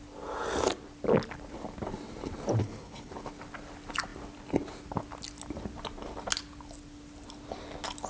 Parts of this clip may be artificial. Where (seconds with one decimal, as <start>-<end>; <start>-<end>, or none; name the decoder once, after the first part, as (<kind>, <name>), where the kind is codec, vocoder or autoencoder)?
2.6-3.1 (codec, HILCodec)